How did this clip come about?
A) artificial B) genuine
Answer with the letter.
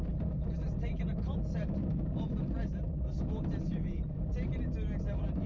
B